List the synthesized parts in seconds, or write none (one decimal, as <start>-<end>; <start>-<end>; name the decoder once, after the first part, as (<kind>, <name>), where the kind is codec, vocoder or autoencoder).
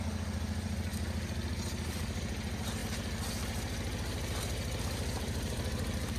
0.0-0.9 (vocoder, BigVGAN v2); 1.5-2.8; 4.8-6.2